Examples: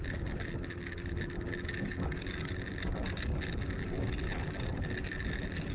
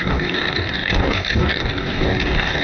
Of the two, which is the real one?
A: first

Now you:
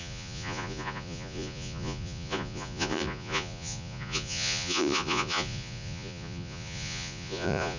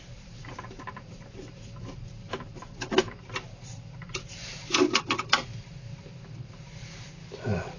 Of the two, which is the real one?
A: second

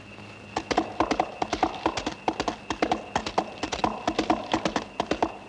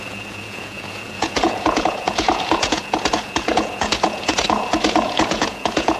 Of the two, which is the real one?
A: first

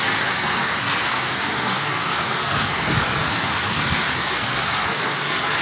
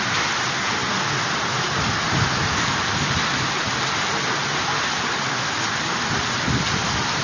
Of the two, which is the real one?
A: second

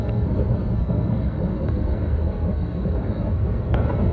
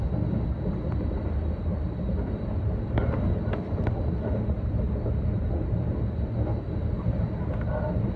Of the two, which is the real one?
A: second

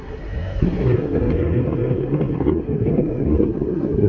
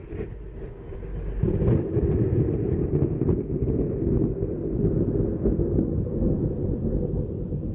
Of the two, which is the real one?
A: second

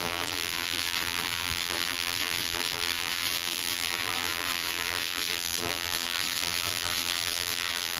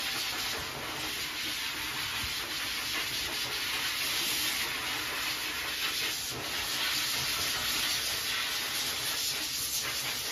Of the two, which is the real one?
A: second